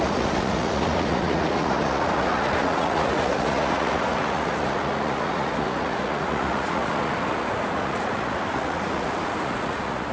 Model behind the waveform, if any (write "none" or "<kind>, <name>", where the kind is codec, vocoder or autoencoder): vocoder, Vocos